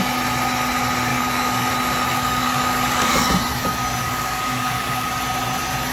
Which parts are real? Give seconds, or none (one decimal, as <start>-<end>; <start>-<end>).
0.0-1.1; 1.7-2.1; 3.3-4.0; 5.2-5.9